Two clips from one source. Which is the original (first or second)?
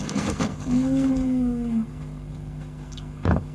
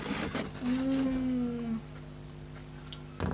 second